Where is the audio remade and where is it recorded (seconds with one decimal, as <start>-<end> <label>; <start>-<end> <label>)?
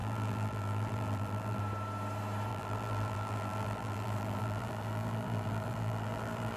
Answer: 0.0-1.6 remade; 1.6-2.5 recorded; 2.5-6.6 remade